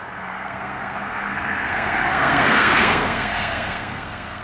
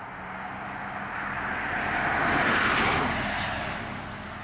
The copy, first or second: first